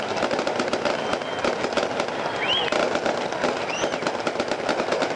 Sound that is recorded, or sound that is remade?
recorded